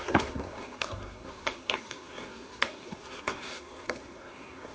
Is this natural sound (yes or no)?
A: no